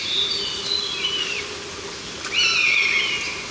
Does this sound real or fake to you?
real